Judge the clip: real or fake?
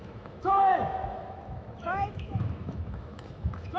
fake